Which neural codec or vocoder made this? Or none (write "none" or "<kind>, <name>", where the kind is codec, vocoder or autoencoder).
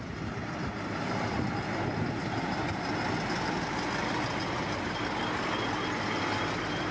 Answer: none